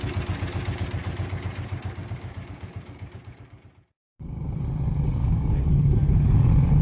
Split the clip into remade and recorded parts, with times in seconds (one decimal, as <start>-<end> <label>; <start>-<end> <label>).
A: 0.0-1.7 recorded; 1.7-3.6 remade; 3.6-5.2 recorded; 5.2-5.7 remade; 5.7-6.8 recorded